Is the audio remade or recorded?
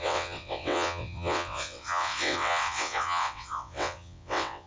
remade